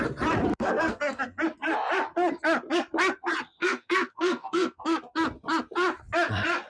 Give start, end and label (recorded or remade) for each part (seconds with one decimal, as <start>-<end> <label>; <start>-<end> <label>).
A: 0.0-0.5 recorded; 0.5-1.2 remade; 1.2-3.6 recorded; 3.6-4.8 remade; 4.8-6.7 recorded